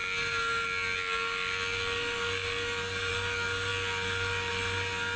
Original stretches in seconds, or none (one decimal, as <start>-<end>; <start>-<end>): 0.0-5.2